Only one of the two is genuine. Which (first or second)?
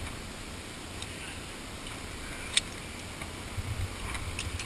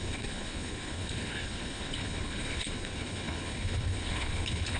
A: first